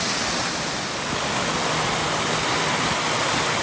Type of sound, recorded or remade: recorded